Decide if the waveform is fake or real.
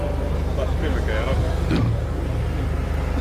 real